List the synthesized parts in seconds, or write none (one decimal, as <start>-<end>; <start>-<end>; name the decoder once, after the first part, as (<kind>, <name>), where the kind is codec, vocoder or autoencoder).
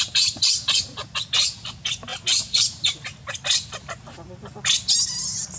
none